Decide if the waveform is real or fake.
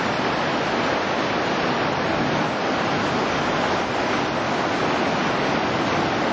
real